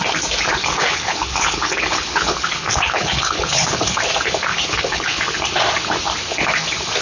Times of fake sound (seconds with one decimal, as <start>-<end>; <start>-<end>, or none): 0.6-4.0; 4.5-5.2